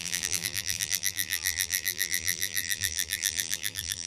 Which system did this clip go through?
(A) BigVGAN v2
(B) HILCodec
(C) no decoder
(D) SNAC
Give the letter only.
A